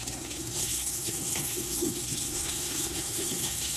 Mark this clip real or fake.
fake